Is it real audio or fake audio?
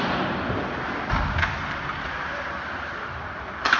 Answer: real